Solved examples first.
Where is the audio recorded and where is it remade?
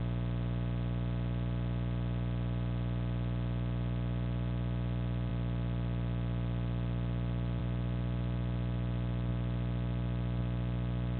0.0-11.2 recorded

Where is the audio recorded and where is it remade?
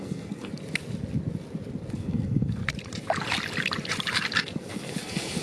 0.0-0.5 remade; 0.5-1.9 recorded; 1.9-2.6 remade; 2.6-4.4 recorded; 4.4-5.4 remade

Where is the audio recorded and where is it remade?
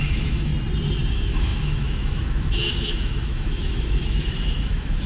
0.0-0.5 remade; 0.5-1.1 recorded; 1.1-5.1 remade